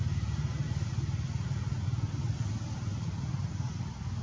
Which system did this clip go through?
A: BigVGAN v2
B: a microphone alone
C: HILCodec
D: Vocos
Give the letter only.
B